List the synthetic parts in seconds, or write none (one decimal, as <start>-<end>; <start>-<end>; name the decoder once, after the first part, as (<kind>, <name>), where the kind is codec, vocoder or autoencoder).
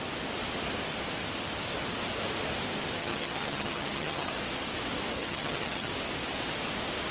3.0-4.3 (vocoder, HiFi-GAN); 5.2-5.9